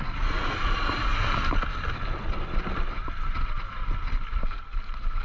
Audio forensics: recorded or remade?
recorded